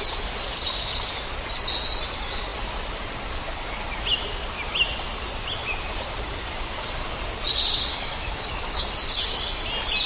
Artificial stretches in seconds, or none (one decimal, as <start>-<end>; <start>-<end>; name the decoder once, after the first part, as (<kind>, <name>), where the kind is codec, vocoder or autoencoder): 7.9-8.9 (autoencoder, DAC-VAE)